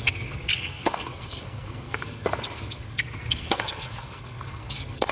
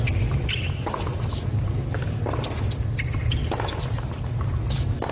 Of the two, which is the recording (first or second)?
second